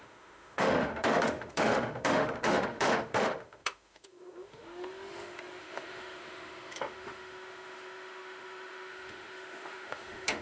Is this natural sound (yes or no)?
no